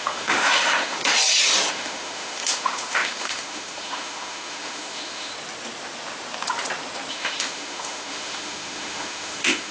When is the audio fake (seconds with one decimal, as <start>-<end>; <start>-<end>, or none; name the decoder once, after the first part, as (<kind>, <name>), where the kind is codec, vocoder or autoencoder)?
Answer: 0.0-1.0 (autoencoder, DAC-VAE); 1.7-5.3; 7.1-9.7